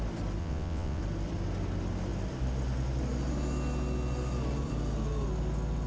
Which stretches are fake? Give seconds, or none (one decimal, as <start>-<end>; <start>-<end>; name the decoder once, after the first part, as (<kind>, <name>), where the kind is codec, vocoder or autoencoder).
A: 0.4-1.0 (vocoder, WaveNeXt)